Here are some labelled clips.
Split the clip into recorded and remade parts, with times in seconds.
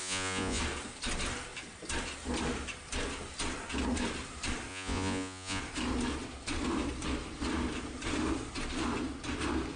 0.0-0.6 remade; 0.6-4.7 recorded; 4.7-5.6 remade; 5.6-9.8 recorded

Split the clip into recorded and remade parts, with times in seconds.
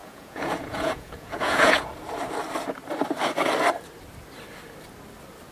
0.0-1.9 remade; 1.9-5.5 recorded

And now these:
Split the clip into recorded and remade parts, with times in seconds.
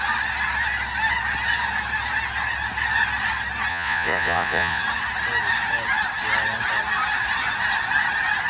0.0-3.7 recorded; 3.7-4.8 remade; 4.8-8.5 recorded